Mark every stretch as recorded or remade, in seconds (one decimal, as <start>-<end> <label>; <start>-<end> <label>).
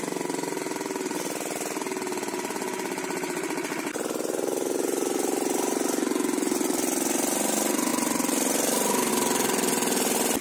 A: 0.0-7.9 recorded; 7.9-9.1 remade; 9.1-10.4 recorded